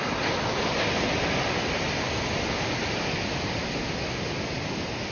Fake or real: real